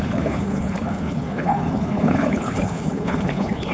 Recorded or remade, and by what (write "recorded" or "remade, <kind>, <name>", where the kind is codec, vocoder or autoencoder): remade, codec, HILCodec